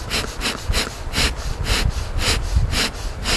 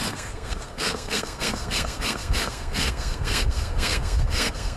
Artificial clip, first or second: second